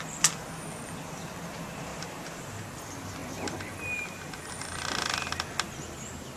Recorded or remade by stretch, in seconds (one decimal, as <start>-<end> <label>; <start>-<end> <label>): 0.0-1.9 recorded; 1.9-2.7 remade; 2.7-6.4 recorded